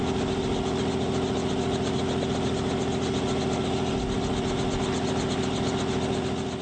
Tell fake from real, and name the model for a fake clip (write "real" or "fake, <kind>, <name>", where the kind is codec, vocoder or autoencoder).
real